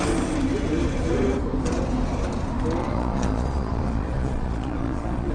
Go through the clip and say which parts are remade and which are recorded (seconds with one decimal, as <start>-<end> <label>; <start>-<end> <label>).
0.0-2.8 recorded; 2.8-5.3 remade